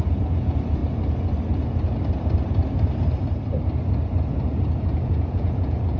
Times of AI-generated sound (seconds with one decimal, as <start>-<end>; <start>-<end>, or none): 0.0-0.8; 4.2-6.0